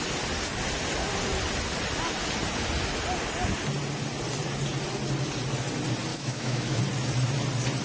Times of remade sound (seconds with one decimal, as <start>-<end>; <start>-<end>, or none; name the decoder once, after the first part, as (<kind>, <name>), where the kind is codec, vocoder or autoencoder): 6.1-6.8 (autoencoder, DAC-VAE)

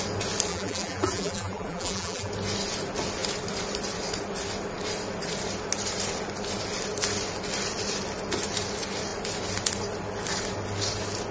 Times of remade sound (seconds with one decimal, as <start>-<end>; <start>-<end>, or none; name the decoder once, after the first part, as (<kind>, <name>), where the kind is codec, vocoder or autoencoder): 0.5-2.3 (vocoder, BigVGAN v2)

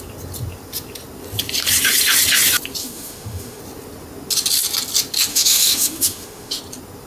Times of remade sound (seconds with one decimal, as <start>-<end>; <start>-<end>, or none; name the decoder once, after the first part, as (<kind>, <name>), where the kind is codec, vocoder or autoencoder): 2.8-3.6 (autoencoder, DAC-VAE); 5.3-6.6